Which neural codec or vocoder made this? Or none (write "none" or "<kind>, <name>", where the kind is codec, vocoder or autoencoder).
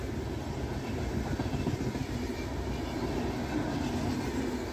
none